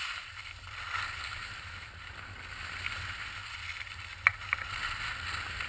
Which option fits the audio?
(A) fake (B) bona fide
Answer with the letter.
B